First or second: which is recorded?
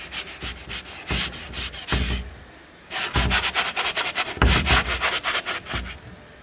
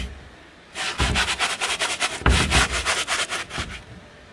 first